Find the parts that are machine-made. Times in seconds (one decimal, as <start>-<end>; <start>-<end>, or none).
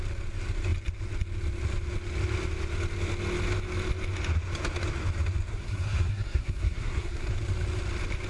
5.5-7.3